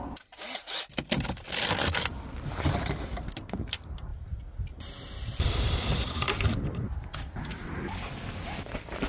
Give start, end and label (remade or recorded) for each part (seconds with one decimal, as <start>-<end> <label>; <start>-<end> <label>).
0.0-4.1 remade; 4.1-5.2 recorded; 5.2-9.1 remade